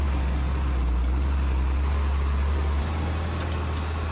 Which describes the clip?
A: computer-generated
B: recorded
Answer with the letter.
B